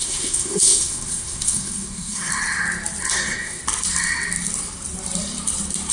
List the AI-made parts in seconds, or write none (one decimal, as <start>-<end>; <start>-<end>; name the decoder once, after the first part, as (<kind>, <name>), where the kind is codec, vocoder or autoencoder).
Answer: 0.0-2.3 (codec, SNAC); 3.1-3.6